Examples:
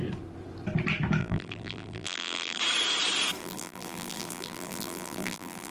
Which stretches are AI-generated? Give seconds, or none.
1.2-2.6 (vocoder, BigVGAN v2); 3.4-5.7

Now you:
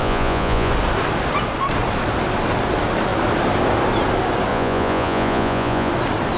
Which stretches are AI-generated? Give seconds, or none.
0.0-0.7 (vocoder, Vocos); 4.5-5.9

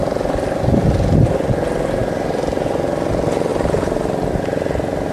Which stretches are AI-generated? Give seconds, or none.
none

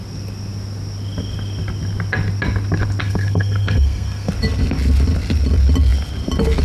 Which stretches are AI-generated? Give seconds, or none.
3.0-4.3 (codec, SNAC)

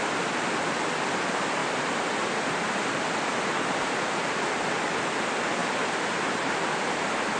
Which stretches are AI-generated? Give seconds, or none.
1.6-4.1 (vocoder, BigVGAN v2); 5.6-6.1

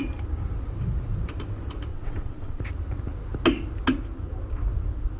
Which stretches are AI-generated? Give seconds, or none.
1.9-2.6 (vocoder, WaveNeXt)

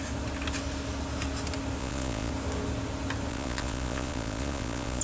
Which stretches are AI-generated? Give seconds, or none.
1.8-2.3 (vocoder, Vocos); 3.3-5.0